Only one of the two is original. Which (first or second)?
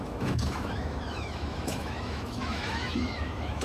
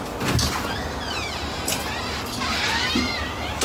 second